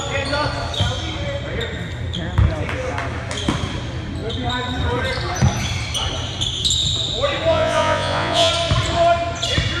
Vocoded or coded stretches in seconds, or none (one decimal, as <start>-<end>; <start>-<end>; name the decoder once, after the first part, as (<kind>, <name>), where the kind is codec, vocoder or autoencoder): 7.5-8.5 (vocoder, Vocos)